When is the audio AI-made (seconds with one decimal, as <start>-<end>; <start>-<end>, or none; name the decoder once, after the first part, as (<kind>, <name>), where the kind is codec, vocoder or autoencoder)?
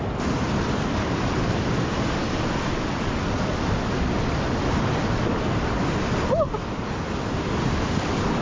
none